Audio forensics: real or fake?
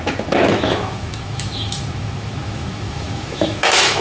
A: fake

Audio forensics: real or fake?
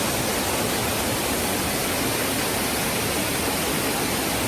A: real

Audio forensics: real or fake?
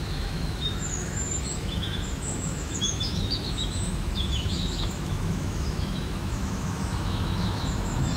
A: fake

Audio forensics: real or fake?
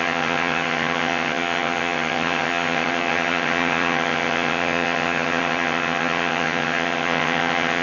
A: fake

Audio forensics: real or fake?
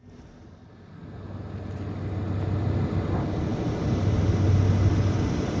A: real